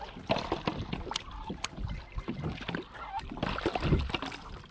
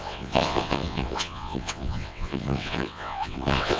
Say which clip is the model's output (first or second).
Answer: second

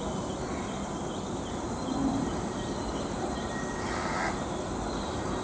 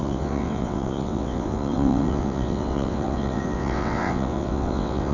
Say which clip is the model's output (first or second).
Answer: second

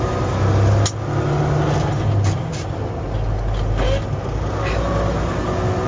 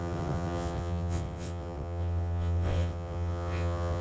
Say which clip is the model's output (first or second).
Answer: second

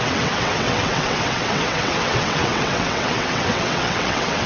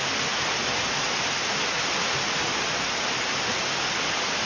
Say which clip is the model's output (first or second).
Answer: first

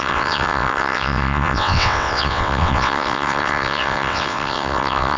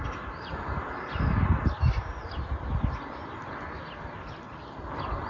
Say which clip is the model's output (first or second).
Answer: first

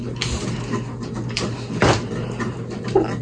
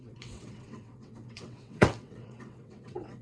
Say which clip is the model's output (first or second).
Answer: second